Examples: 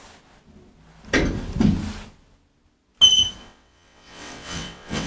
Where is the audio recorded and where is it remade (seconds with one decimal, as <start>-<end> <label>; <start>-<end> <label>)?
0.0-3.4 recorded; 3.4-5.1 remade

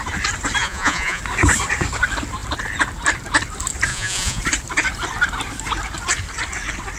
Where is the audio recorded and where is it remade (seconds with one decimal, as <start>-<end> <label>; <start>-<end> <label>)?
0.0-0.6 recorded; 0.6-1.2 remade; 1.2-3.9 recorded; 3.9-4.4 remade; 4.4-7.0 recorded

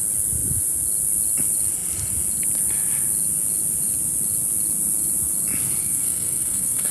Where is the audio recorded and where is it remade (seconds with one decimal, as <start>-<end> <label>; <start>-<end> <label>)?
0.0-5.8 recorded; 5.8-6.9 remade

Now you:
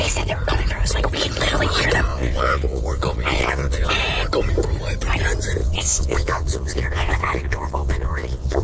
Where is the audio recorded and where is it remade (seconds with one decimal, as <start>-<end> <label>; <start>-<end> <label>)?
0.0-2.1 recorded; 2.1-3.9 remade; 3.9-5.6 recorded; 5.6-8.6 remade